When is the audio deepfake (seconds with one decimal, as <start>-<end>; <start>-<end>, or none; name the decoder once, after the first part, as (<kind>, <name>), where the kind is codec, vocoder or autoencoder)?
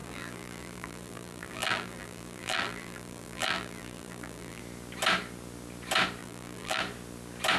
0.0-4.6 (vocoder, BigVGAN v2); 6.2-6.8